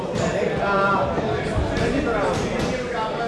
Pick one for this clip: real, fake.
real